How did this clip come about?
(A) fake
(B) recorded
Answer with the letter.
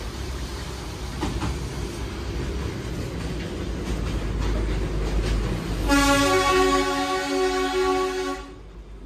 B